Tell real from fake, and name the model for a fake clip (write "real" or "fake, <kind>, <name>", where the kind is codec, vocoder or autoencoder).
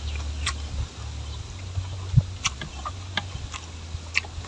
real